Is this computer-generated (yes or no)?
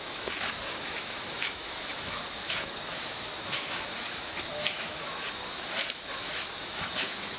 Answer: yes